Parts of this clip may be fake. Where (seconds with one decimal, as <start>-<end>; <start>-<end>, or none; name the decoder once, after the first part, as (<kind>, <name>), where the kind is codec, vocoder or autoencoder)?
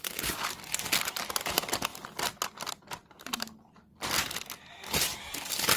none